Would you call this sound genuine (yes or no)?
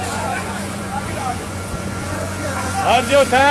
no